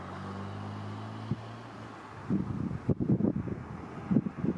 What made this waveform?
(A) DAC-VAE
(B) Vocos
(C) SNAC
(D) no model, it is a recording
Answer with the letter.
D